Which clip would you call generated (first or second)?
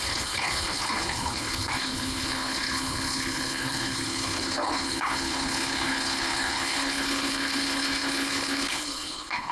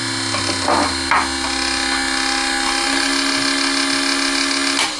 first